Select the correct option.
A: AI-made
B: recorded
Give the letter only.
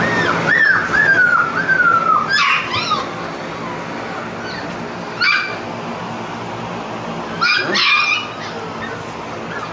B